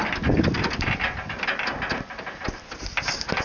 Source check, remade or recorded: recorded